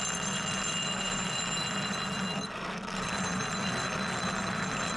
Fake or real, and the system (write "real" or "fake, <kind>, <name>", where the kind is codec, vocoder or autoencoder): real